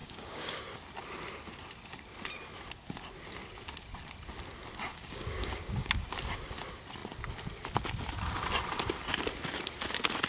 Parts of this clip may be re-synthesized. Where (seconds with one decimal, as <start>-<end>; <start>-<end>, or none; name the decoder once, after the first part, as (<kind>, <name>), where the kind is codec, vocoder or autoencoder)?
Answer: 0.0-0.6 (codec, DAC); 4.9-5.9